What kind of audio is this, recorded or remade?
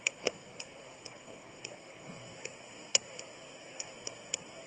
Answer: remade